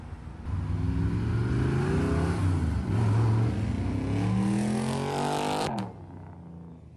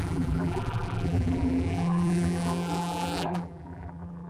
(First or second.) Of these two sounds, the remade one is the second